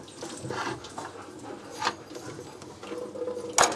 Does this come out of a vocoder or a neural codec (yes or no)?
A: no